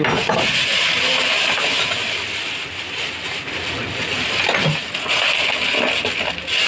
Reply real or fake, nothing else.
real